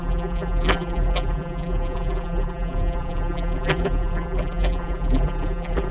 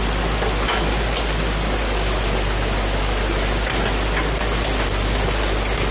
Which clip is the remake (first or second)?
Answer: first